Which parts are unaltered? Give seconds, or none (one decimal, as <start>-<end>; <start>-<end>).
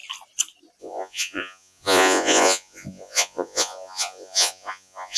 0.0-0.8